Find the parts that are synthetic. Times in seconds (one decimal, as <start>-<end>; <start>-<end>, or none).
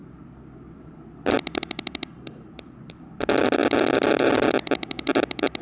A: none